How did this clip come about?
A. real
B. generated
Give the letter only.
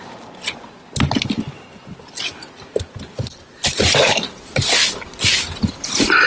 A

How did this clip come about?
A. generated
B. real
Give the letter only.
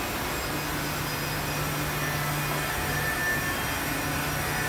B